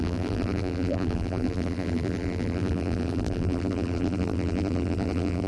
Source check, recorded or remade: remade